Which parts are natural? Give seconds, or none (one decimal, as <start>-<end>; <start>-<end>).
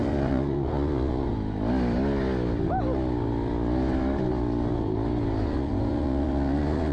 1.3-5.4